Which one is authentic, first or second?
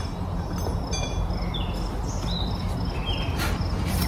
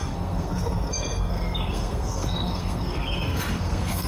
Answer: first